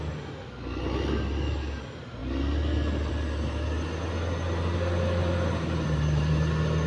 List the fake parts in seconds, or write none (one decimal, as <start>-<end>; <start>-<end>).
5.2-6.5